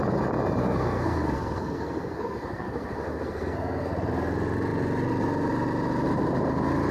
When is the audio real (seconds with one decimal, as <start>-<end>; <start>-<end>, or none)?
0.0-0.6; 3.9-6.9